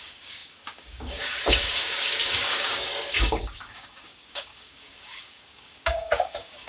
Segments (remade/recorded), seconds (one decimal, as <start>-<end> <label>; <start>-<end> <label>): 0.0-6.7 remade